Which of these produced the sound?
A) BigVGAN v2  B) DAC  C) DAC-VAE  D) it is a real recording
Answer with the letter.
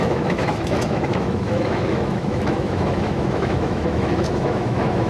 C